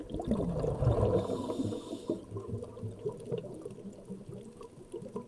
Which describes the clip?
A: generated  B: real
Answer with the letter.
B